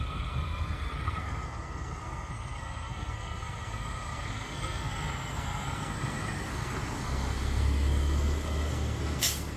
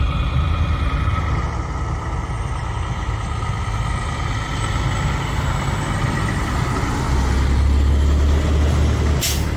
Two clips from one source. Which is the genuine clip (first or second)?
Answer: second